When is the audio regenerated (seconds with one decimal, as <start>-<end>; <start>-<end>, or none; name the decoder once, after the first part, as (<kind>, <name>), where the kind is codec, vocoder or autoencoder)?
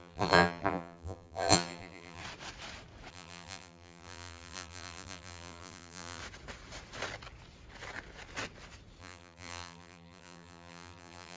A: 0.0-2.2 (vocoder, BigVGAN v2); 3.1-6.2; 9.0-11.4